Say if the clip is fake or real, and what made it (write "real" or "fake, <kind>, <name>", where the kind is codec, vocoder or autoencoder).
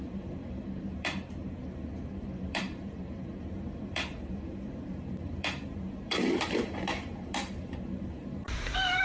fake, vocoder, BigVGAN v2